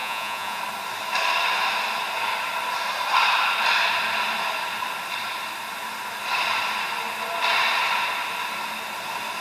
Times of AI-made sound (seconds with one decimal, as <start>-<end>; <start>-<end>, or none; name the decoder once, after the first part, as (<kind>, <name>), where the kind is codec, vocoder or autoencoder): 0.0-0.6 (vocoder, Vocos)